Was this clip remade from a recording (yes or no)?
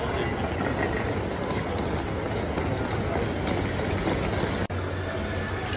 no